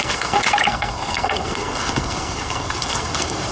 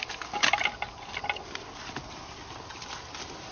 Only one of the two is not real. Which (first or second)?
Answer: first